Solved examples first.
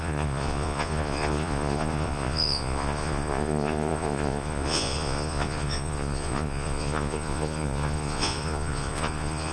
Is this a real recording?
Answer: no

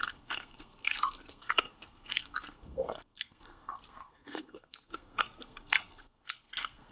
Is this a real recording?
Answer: no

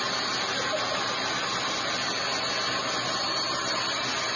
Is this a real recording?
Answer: yes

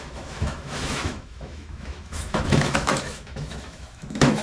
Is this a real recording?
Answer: no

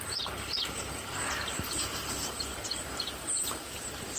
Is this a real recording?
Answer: no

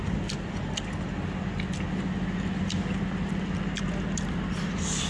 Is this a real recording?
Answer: yes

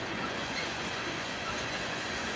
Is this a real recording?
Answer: no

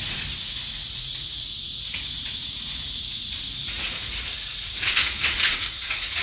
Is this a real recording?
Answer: no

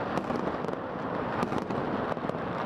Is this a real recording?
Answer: yes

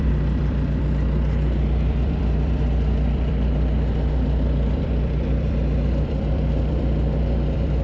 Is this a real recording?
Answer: no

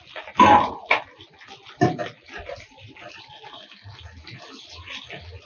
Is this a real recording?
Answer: yes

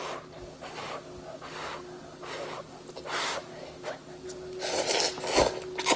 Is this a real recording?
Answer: yes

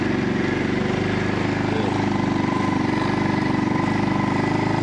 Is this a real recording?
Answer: yes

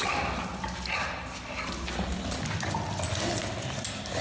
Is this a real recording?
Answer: yes